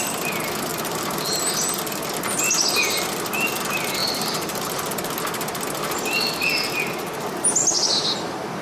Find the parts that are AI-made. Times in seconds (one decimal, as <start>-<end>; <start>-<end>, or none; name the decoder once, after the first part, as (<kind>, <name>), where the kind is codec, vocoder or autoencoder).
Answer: 0.7-1.4 (vocoder, BigVGAN v2); 4.0-4.9